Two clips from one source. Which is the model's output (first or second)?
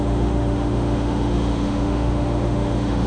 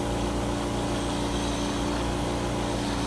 first